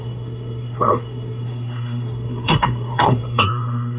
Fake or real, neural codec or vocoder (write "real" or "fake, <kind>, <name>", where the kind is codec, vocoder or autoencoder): fake, codec, SNAC